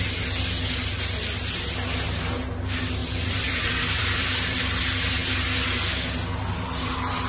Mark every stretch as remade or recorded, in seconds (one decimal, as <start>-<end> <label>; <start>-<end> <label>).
0.0-3.0 recorded; 3.0-4.8 remade; 4.8-7.3 recorded

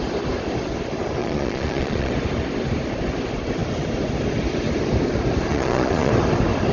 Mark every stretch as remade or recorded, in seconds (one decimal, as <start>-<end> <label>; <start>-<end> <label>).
0.0-1.2 recorded; 1.2-2.1 remade; 2.1-5.5 recorded; 5.5-6.1 remade; 6.1-6.7 recorded

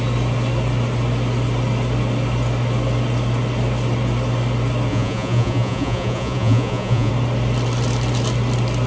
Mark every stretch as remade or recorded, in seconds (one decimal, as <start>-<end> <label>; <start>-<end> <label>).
0.0-4.9 recorded; 4.9-7.1 remade; 7.1-8.9 recorded